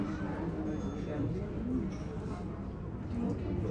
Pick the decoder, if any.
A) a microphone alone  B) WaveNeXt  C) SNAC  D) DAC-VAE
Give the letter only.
A